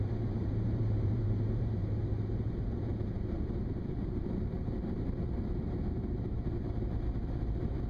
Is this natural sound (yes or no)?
no